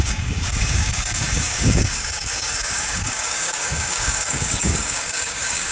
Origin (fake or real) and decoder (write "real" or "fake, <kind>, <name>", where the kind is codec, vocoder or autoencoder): fake, codec, DAC